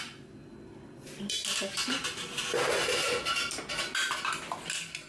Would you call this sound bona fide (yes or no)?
yes